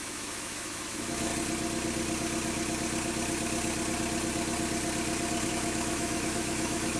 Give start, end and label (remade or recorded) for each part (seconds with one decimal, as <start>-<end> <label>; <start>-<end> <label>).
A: 0.0-1.3 remade; 1.3-5.5 recorded; 5.5-7.0 remade